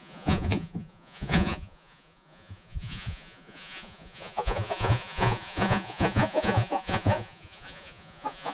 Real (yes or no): no